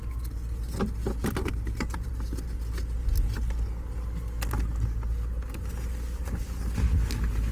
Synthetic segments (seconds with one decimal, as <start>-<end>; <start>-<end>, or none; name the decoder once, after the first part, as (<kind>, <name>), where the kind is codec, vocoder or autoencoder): 1.0-2.1 (vocoder, BigVGAN v2)